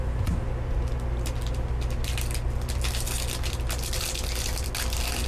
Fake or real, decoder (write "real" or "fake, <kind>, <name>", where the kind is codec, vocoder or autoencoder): real